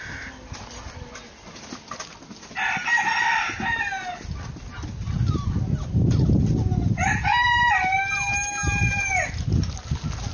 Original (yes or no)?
yes